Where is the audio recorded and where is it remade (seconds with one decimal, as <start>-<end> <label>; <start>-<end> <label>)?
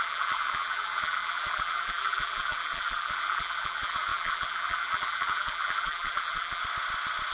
0.0-6.6 remade; 6.6-7.3 recorded